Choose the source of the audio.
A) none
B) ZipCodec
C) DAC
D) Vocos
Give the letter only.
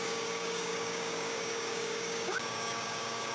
C